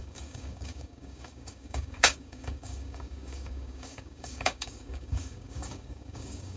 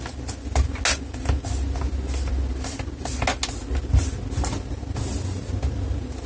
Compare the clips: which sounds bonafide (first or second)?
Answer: second